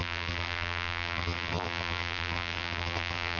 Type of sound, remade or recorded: remade